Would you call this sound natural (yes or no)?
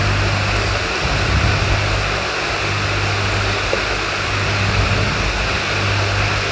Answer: yes